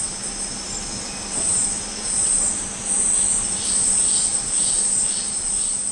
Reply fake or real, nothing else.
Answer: real